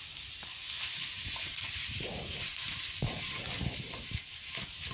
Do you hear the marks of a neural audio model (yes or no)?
no